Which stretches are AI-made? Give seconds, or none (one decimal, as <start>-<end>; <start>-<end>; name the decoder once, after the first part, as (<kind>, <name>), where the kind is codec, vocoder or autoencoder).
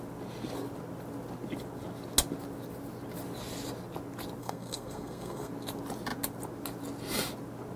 4.4-5.5 (codec, SNAC)